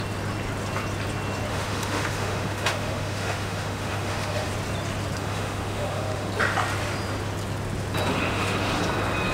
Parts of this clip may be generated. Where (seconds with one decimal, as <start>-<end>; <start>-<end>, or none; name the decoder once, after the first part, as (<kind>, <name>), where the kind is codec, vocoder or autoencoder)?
1.5-4.5 (autoencoder, DAC-VAE); 5.2-6.3; 8.1-8.8